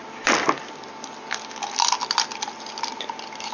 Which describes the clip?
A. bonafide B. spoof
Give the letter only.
A